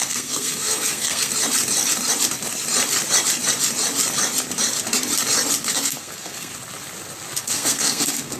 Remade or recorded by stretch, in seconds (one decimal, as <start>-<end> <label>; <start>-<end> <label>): 0.0-1.3 remade; 1.3-5.6 recorded; 5.6-6.5 remade; 6.5-7.4 recorded; 7.4-8.4 remade